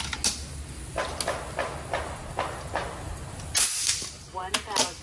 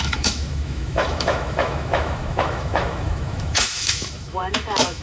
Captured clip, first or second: first